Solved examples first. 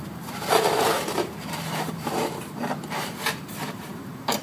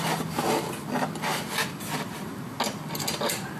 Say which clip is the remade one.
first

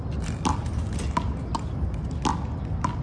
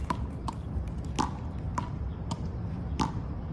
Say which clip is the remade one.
second